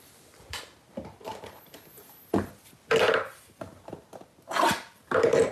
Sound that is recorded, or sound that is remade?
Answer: recorded